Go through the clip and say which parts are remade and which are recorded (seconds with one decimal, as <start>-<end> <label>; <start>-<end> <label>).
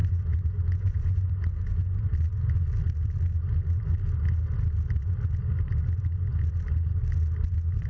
0.0-2.0 remade; 2.0-7.9 recorded